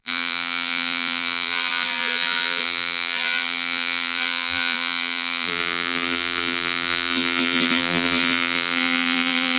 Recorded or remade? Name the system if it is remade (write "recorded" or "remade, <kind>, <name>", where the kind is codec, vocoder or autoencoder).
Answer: remade, vocoder, BigVGAN v2